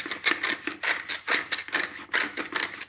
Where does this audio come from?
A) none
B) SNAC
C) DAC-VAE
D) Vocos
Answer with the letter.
A